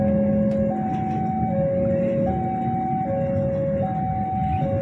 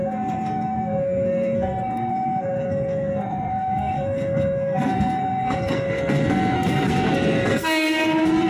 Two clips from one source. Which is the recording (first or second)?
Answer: first